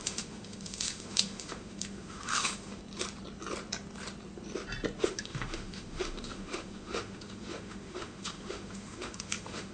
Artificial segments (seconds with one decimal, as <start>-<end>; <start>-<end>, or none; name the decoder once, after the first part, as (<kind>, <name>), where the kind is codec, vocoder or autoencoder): 0.0-2.8 (autoencoder, DAC-VAE); 5.0-9.7